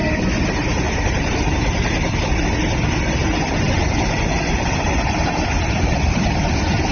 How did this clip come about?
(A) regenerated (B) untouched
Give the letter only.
B